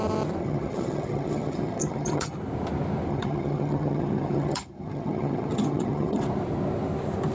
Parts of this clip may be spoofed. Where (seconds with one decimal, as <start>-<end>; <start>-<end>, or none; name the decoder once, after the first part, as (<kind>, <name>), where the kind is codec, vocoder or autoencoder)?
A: 0.4-2.3 (vocoder, HiFi-GAN); 3.1-6.2